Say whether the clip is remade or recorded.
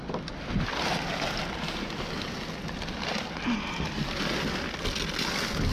recorded